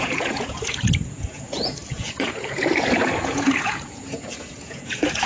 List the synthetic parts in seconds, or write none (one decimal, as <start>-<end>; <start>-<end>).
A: 0.0-5.3

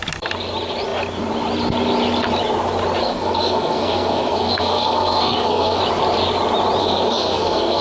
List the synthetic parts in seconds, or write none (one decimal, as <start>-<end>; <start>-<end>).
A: 3.0-5.8; 6.8-7.8

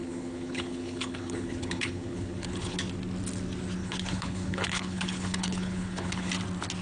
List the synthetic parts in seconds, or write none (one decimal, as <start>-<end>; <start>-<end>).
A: 0.0-2.8; 3.8-6.3